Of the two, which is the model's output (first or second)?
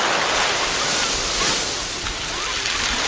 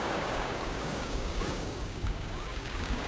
second